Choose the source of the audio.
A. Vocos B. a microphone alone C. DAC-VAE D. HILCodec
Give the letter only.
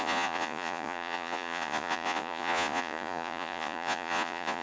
A